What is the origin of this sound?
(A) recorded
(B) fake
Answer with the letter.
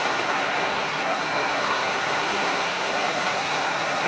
B